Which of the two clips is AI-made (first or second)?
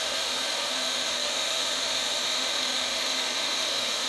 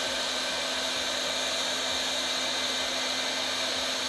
first